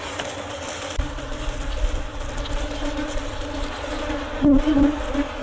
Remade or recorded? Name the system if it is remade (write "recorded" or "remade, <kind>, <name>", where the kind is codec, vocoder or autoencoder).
recorded